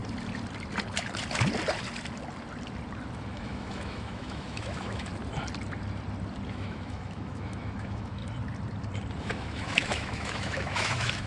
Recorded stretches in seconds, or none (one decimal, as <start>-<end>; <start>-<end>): 0.0-3.3; 5.1-6.5; 8.2-9.2